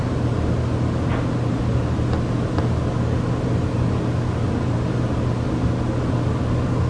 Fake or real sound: real